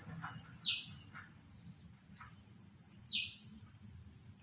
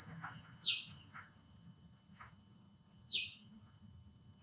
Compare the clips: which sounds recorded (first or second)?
first